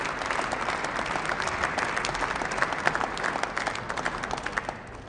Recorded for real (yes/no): yes